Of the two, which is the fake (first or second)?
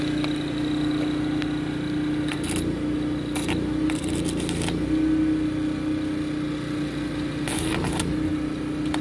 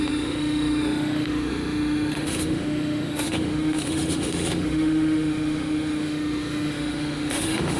second